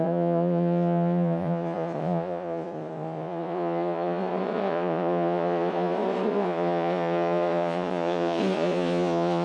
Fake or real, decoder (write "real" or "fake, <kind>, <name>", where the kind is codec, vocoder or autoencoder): fake, vocoder, Vocos